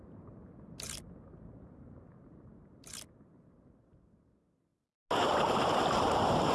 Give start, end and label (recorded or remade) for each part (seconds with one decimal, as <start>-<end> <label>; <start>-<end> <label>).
0.0-6.5 recorded